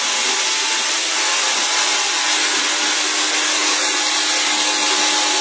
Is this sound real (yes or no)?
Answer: yes